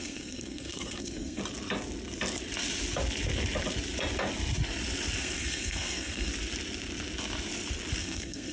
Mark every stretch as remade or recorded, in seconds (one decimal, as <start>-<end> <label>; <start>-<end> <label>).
0.0-1.4 remade; 1.4-5.2 recorded; 5.2-6.3 remade; 6.3-8.0 recorded; 8.0-8.5 remade